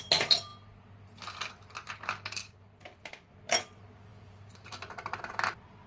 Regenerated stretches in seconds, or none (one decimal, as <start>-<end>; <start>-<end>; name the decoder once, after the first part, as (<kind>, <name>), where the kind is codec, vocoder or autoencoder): 2.4-3.3 (vocoder, BigVGAN v2); 4.1-5.2